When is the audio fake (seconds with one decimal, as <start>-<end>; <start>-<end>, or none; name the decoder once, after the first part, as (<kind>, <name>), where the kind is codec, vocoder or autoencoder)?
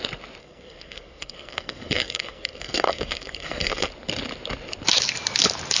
0.4-3.9 (codec, SNAC)